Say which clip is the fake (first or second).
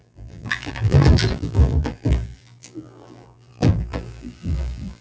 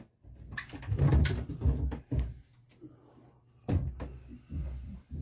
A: first